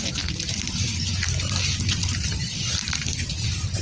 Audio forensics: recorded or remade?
remade